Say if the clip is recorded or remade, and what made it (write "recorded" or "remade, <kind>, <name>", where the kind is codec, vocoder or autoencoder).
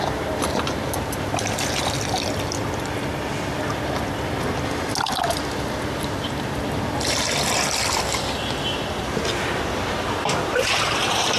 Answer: recorded